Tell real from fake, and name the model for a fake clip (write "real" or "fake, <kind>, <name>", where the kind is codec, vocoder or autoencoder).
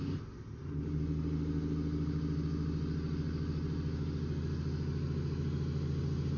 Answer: real